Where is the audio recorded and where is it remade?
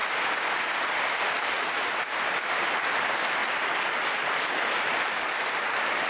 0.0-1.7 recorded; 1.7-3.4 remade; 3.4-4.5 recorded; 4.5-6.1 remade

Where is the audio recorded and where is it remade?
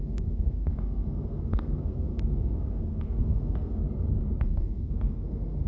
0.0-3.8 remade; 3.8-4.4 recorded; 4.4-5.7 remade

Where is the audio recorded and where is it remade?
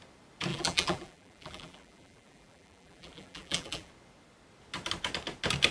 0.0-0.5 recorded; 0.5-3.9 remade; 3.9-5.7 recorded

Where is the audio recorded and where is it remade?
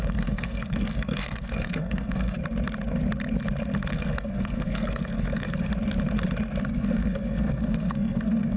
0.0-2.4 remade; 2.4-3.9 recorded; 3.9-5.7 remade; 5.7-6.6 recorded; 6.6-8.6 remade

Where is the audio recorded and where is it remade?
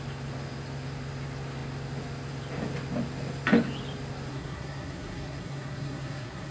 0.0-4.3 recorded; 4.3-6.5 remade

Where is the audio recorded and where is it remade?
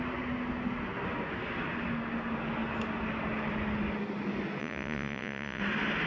0.0-4.6 recorded; 4.6-5.6 remade; 5.6-6.1 recorded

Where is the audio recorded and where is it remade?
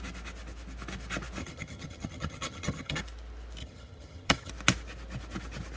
0.0-1.4 recorded; 1.4-3.0 remade; 3.0-3.6 recorded; 3.6-4.5 remade; 4.5-5.8 recorded